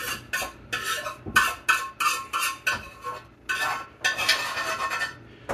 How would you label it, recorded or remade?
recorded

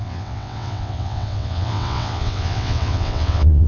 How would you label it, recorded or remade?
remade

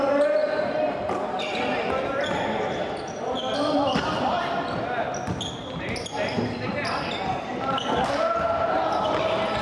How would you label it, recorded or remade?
recorded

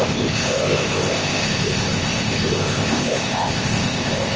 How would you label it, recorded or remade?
remade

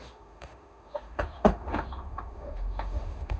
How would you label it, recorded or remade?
remade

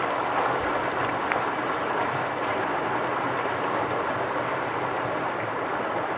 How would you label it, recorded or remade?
recorded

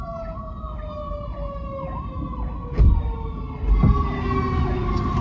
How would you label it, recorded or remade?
recorded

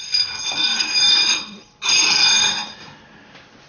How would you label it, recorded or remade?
recorded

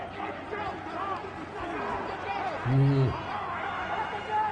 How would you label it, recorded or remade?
recorded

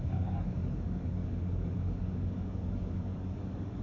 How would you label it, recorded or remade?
remade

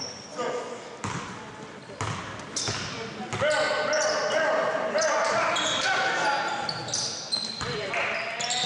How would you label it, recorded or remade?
recorded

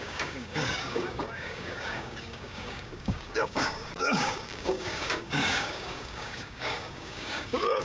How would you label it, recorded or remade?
remade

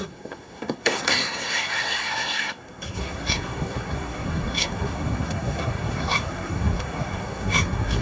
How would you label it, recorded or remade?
remade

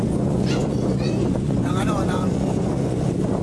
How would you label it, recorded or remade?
remade